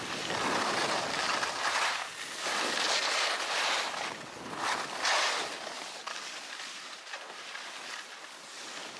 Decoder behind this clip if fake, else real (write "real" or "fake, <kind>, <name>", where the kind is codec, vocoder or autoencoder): real